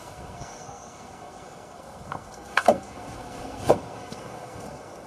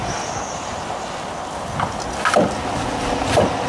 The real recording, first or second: second